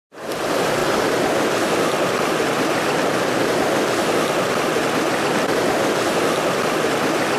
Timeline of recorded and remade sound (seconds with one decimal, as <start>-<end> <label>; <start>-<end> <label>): 0.0-7.4 recorded